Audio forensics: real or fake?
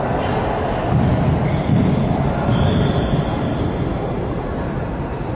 real